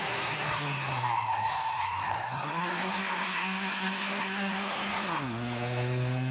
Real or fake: fake